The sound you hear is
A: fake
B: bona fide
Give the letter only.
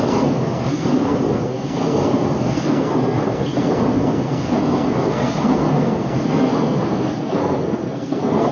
A